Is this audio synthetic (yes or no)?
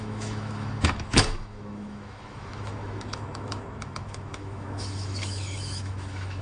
yes